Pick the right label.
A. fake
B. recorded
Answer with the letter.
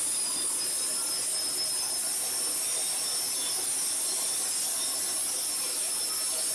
B